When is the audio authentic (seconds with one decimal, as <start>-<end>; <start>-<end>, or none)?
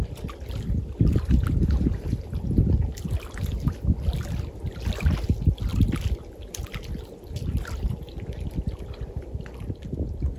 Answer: 0.0-10.4